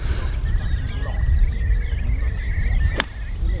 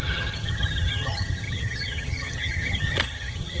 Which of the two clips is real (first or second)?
first